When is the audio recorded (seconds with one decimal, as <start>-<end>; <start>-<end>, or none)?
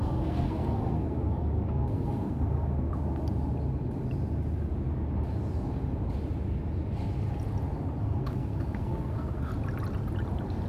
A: 2.9-8.0; 9.5-10.7